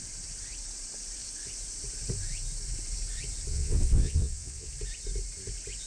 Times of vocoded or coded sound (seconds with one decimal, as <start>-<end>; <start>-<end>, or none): 3.5-4.7